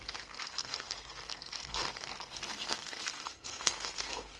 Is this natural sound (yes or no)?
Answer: no